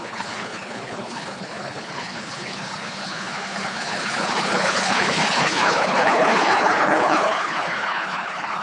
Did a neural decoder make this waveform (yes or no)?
yes